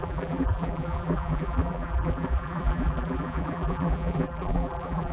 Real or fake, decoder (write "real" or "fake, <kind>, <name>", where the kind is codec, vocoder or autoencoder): fake, vocoder, BigVGAN v2